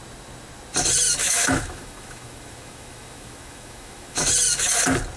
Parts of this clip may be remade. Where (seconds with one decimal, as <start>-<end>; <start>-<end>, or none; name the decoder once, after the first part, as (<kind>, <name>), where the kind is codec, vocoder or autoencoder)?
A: 1.2-4.3 (autoencoder, DAC-VAE)